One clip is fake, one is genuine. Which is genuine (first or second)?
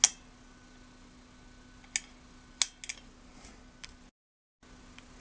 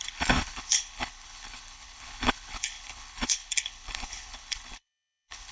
first